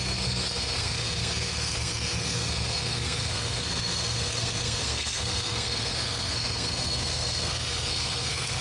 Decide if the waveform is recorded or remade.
remade